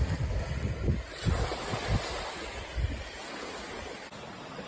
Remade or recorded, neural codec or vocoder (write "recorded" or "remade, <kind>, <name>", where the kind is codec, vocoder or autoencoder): recorded